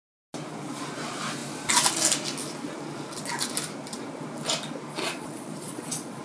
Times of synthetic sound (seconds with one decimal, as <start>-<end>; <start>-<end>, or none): 4.9-6.2